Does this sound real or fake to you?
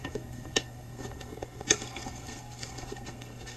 fake